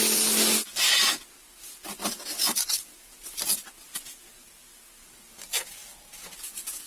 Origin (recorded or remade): recorded